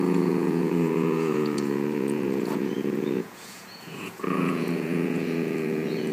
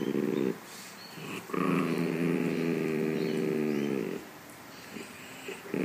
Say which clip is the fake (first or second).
first